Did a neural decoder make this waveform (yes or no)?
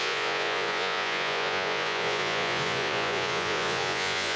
yes